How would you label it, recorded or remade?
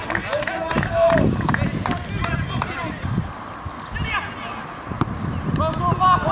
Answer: recorded